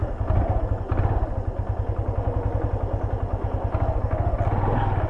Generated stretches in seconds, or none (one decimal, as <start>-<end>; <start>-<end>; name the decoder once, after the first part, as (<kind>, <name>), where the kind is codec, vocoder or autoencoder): none